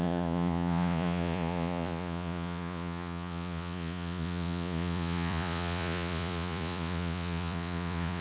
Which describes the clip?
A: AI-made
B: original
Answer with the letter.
A